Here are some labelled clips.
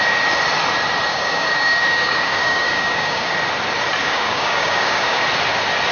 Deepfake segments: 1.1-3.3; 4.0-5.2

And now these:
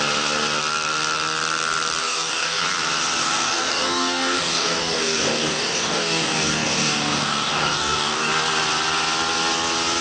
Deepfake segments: 2.0-2.6; 3.2-8.3

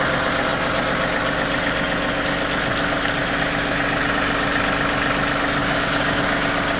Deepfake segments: 5.6-6.2

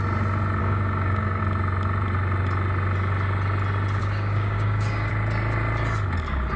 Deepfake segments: 0.6-1.4; 4.0-5.1

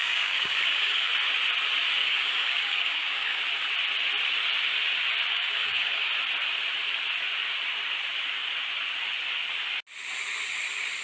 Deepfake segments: 0.0-1.1; 2.0-3.4; 5.3-6.1